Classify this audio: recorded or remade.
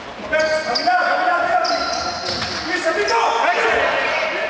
recorded